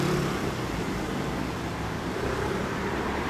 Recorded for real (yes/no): no